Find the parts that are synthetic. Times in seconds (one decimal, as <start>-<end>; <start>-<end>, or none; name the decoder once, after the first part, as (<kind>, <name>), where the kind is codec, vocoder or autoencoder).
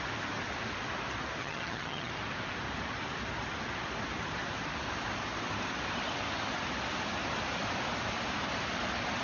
1.4-2.1 (vocoder, HiFi-GAN)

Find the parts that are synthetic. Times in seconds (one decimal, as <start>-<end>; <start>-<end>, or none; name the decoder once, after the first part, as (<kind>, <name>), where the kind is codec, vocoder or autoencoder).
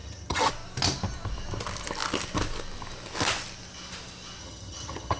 0.0-0.5 (vocoder, HiFi-GAN); 4.4-5.2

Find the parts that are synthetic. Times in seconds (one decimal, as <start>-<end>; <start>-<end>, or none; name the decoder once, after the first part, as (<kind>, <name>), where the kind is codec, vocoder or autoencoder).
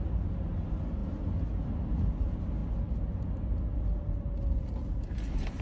none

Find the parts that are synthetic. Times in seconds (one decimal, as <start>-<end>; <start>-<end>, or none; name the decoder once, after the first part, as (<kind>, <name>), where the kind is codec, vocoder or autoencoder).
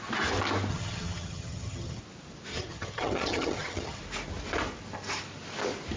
0.7-2.0 (vocoder, HiFi-GAN); 2.5-4.0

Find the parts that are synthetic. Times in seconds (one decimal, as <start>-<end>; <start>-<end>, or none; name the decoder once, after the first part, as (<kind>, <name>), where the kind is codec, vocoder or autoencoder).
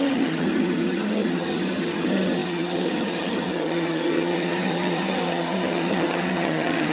0.0-6.9 (vocoder, HiFi-GAN)